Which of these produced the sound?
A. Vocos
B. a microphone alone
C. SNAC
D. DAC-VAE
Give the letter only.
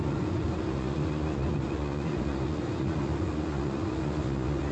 A